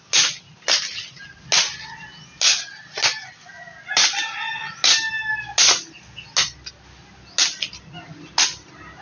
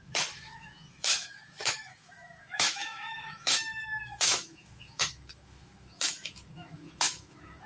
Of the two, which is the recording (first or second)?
first